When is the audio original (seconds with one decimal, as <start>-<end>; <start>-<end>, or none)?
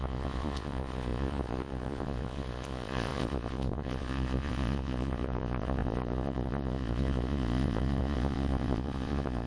none